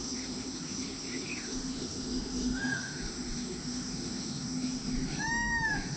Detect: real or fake fake